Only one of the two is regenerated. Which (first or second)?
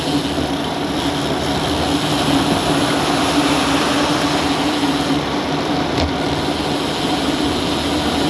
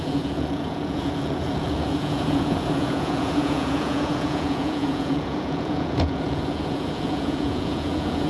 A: second